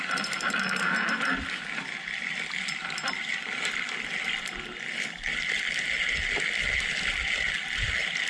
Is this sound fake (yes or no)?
no